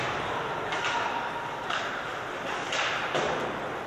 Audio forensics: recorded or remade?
recorded